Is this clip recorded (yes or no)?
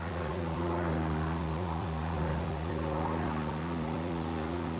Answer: no